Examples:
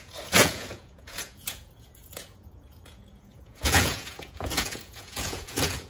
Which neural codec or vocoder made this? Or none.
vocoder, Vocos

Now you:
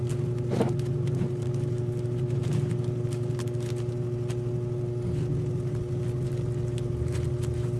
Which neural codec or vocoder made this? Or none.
none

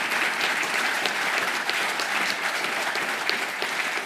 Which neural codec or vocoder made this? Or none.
none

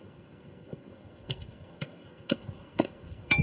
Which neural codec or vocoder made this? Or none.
codec, SNAC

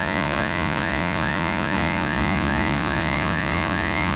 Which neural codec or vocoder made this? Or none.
vocoder, Vocos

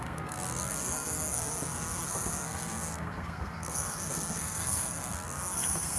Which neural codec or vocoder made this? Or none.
codec, SNAC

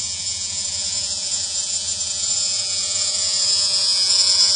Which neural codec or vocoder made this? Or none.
vocoder, Vocos